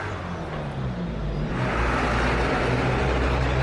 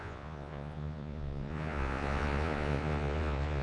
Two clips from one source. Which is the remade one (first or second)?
second